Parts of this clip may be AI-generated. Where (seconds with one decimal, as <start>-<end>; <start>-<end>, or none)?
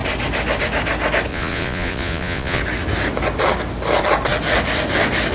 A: 1.3-2.6